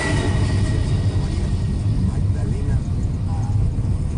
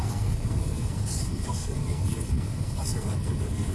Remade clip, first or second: second